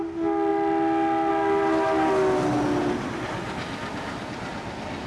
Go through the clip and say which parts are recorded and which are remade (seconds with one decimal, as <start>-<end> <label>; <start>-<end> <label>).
0.0-5.1 recorded